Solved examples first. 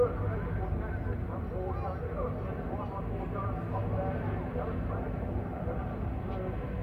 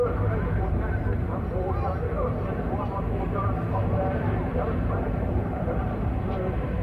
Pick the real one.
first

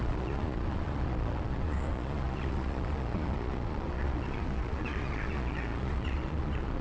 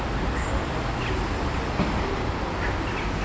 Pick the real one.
second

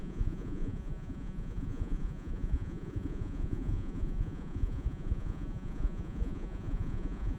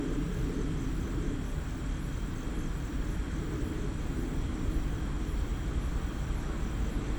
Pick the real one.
second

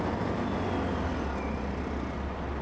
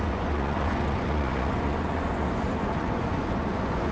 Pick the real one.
first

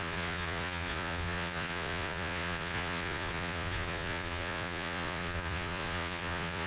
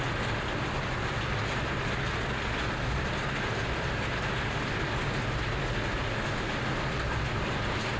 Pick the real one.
second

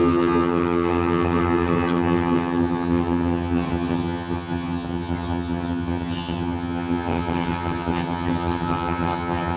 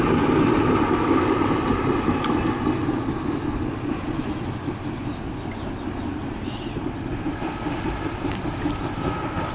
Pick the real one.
second